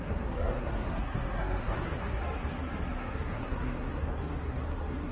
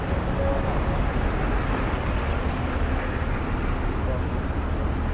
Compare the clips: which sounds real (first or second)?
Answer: second